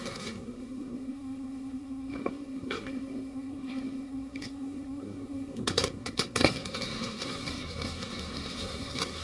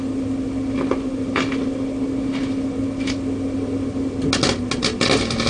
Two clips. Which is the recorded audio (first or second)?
second